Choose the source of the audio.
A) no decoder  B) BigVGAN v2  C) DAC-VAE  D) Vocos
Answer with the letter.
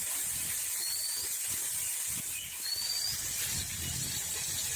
A